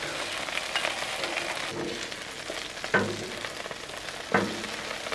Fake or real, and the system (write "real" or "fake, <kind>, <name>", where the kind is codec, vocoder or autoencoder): real